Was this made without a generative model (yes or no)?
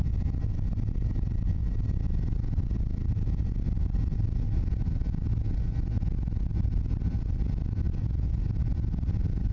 yes